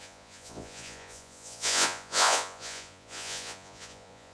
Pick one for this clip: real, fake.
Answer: fake